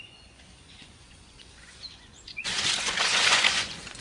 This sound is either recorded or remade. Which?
remade